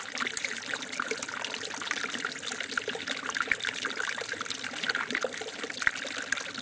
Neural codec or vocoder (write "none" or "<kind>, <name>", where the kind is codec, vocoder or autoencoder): none